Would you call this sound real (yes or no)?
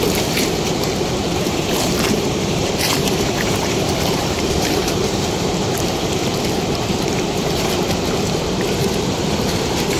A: no